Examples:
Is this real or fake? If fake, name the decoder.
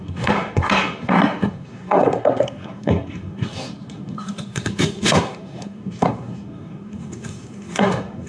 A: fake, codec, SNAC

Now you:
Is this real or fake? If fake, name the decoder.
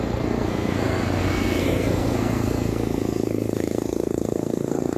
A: fake, codec, SNAC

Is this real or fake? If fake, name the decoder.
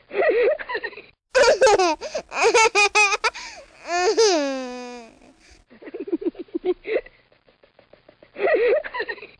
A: real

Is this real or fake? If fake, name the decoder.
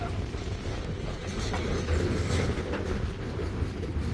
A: real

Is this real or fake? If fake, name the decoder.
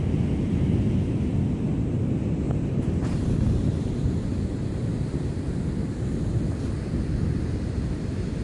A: real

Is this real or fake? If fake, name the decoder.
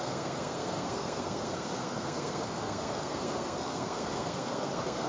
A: fake, codec, SNAC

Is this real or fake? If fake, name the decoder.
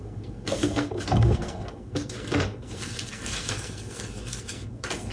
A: fake, codec, SNAC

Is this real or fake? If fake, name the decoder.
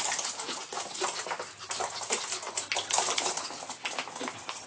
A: real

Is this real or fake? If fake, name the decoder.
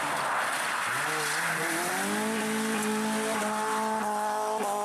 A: real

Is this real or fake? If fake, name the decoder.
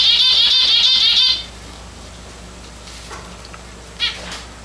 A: real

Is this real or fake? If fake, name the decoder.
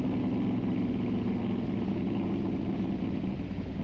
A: real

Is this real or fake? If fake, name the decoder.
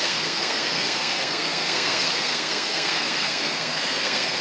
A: fake, codec, SNAC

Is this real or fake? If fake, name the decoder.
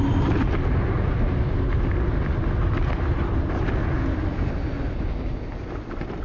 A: real